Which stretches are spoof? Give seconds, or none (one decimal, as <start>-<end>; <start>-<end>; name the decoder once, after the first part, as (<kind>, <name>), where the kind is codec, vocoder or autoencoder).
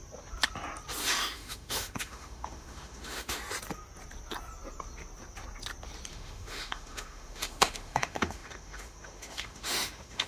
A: 1.0-3.4 (autoencoder, DAC-VAE); 6.1-10.3